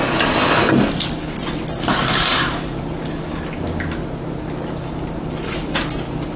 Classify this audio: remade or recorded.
recorded